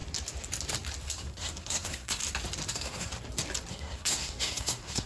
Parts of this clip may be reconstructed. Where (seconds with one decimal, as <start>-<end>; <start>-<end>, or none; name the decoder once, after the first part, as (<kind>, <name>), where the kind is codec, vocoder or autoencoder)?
1.1-2.2 (codec, SNAC); 2.7-3.1; 3.7-5.1